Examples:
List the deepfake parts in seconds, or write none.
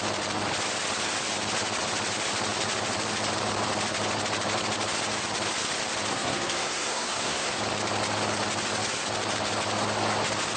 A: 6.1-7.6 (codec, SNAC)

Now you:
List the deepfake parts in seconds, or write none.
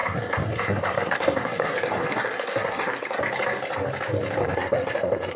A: 0.0-3.2 (codec, SNAC); 4.4-5.4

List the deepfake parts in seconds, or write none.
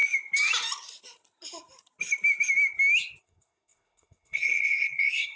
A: 3.2-5.4 (codec, SNAC)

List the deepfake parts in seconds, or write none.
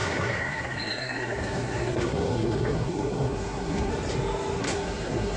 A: 0.0-3.9 (codec, SNAC); 4.6-5.4